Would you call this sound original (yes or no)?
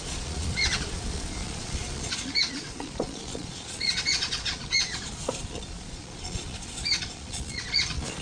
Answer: no